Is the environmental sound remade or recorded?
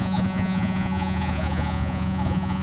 remade